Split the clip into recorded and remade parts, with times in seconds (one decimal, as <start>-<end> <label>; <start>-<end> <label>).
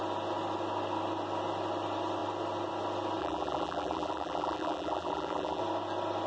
0.0-3.2 recorded; 3.2-5.6 remade; 5.6-6.3 recorded